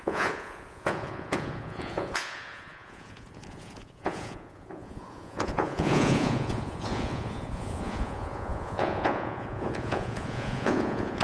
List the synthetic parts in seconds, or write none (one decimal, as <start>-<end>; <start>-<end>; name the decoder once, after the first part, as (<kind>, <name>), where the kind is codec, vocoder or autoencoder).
0.0-11.2 (vocoder, Vocos)